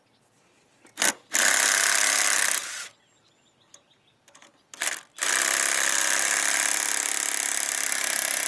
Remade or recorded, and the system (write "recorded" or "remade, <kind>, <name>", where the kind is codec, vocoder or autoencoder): recorded